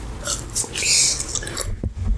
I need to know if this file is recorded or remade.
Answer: recorded